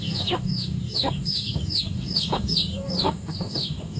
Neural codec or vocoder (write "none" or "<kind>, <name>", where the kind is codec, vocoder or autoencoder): codec, DAC